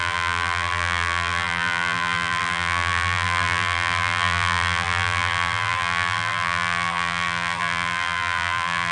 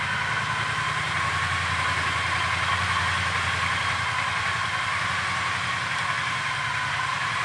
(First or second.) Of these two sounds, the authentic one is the second